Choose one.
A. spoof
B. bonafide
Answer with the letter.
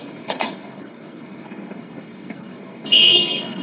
A